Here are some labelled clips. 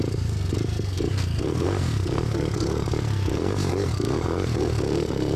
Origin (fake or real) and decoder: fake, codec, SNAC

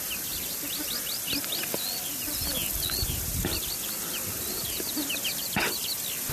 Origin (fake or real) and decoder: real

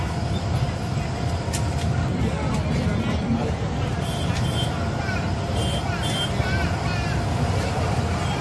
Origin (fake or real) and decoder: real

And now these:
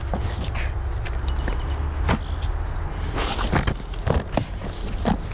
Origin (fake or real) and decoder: real